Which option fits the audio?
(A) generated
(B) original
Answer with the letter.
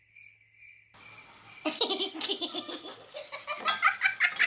B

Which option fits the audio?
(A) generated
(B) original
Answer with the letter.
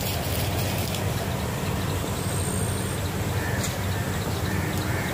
B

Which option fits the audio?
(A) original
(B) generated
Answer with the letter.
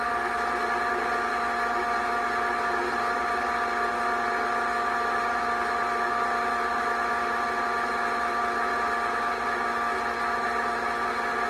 A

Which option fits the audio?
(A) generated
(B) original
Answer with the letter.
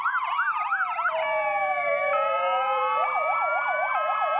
A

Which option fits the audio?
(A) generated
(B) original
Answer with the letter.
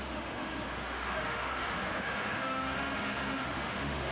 A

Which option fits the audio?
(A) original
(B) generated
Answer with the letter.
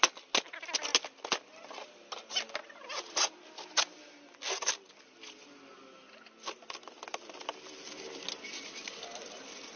A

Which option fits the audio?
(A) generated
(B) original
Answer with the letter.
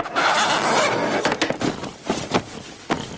B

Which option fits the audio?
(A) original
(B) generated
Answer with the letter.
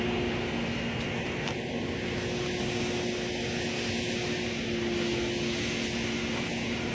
A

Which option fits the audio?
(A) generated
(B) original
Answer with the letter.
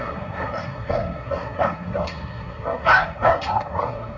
A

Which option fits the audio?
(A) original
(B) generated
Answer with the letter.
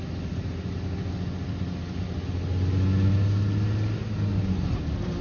A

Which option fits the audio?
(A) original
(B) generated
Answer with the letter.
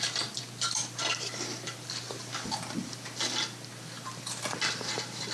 B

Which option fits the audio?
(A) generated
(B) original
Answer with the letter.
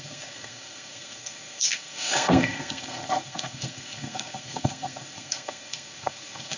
A